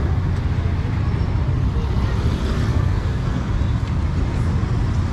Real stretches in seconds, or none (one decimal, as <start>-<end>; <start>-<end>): 0.0-2.7; 3.5-5.1